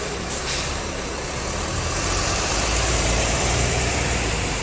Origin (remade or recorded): remade